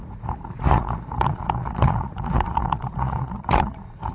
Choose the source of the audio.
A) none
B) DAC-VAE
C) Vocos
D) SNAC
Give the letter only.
C